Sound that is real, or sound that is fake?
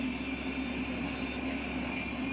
real